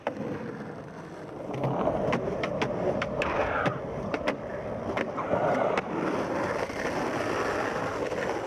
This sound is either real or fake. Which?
real